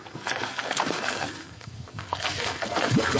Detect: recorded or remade remade